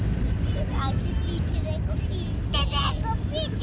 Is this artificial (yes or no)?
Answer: no